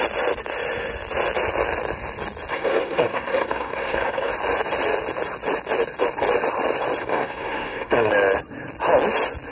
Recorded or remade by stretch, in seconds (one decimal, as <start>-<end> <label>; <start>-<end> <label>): 0.0-2.5 recorded; 2.5-4.3 remade; 4.3-7.0 recorded; 7.0-8.1 remade; 8.1-9.5 recorded